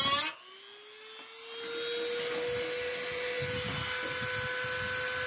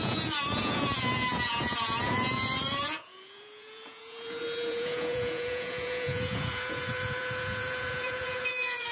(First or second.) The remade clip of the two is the second